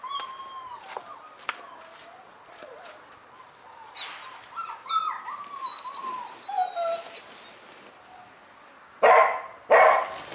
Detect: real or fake real